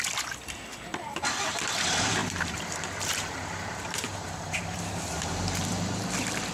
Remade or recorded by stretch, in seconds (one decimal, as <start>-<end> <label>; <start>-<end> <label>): 0.0-2.2 recorded; 2.2-6.1 remade; 6.1-6.5 recorded